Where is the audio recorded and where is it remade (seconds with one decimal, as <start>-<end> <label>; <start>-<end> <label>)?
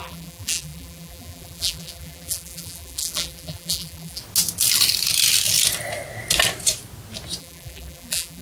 0.0-4.2 remade; 4.2-7.4 recorded; 7.4-8.4 remade